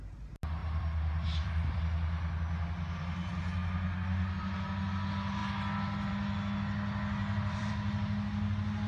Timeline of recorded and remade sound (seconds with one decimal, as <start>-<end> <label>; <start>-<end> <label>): 0.0-0.6 recorded; 0.6-1.8 remade; 1.8-7.2 recorded; 7.2-7.7 remade; 7.7-8.9 recorded